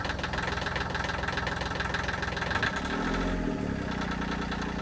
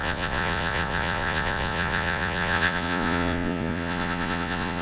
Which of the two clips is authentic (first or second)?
first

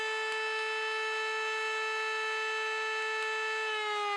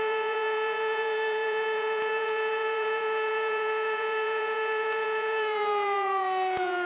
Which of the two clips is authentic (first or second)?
first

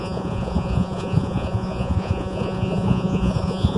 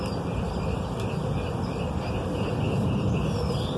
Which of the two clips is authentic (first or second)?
second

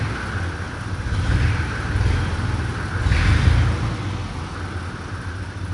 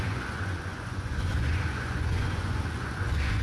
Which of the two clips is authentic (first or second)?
first